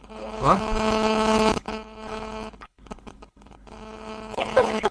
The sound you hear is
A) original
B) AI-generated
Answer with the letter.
B